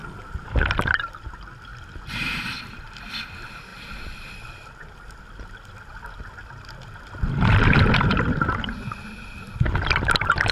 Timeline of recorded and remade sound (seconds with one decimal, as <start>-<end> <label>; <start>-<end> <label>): 0.0-0.9 remade; 0.9-3.7 recorded; 3.7-8.1 remade; 8.1-10.5 recorded